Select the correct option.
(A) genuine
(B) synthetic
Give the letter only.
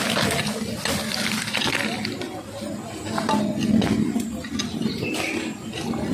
A